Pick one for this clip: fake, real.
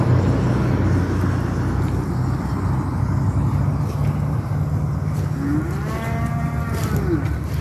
real